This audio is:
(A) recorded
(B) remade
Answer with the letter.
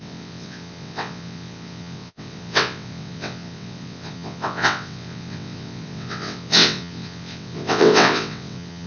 B